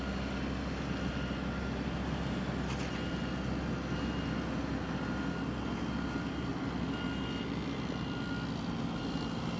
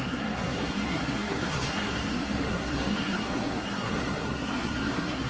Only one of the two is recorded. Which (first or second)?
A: first